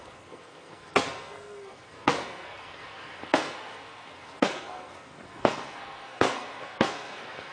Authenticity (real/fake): fake